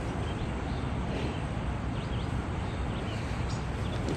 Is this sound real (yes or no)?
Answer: yes